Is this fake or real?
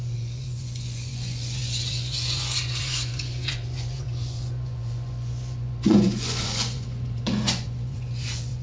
fake